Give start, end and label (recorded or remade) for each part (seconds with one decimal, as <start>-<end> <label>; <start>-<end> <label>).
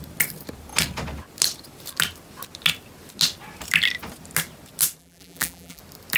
0.0-5.0 recorded; 5.0-5.8 remade; 5.8-6.2 recorded